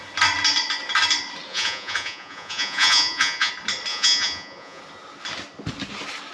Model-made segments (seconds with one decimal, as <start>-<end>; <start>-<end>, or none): 1.5-3.5; 3.9-4.8